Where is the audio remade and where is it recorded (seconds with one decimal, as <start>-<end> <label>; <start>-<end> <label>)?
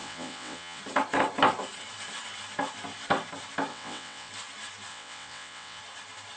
0.0-0.8 remade; 0.8-3.7 recorded; 3.7-4.3 remade; 4.3-4.9 recorded; 4.9-5.8 remade; 5.8-6.4 recorded